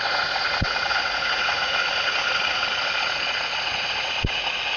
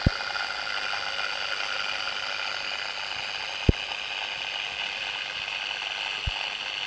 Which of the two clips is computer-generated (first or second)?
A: first